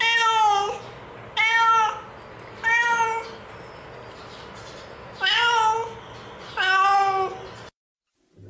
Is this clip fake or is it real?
real